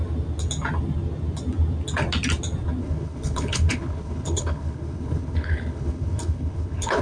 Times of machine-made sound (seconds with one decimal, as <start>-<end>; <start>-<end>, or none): 2.8-7.0